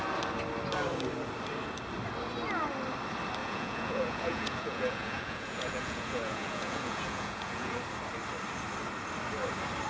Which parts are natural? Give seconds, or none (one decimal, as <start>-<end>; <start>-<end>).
0.0-3.4; 7.8-9.9